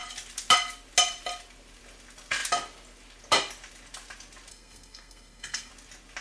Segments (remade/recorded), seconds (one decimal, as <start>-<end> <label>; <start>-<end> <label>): 0.0-4.5 recorded; 4.5-5.7 remade; 5.7-6.2 recorded